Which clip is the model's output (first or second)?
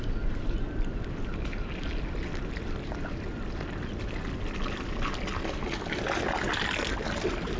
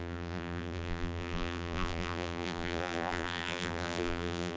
second